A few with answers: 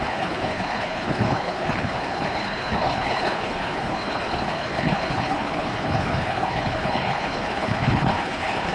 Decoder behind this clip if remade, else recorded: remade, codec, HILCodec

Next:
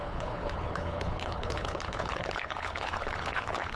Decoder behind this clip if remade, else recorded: remade, codec, HILCodec